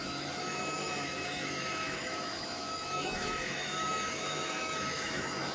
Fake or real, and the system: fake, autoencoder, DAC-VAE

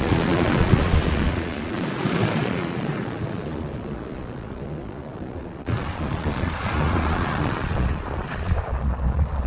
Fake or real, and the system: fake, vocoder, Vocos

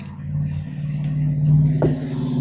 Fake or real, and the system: real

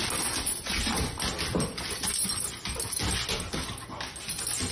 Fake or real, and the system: real